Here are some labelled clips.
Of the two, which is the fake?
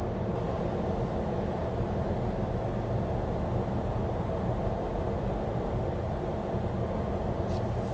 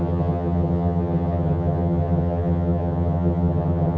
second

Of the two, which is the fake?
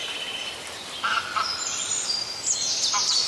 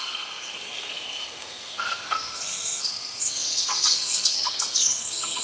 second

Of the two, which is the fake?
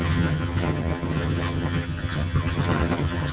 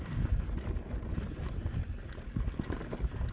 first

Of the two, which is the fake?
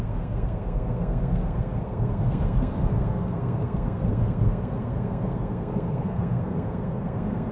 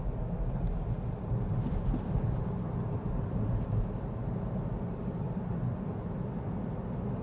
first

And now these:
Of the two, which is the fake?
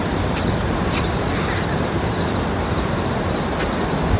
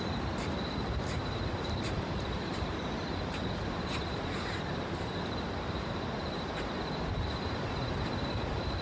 second